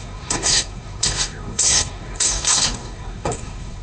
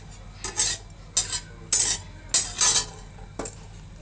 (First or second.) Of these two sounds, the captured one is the second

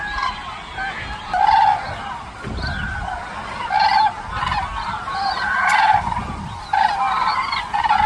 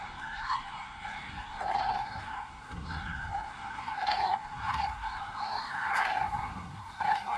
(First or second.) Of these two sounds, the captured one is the first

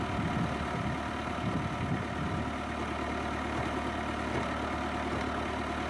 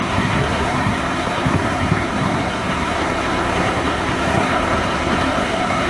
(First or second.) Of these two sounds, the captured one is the first